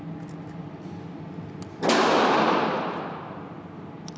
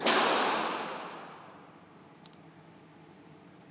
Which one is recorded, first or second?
first